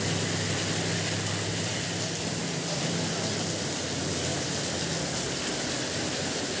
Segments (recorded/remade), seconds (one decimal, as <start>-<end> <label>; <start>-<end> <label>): 0.0-6.6 recorded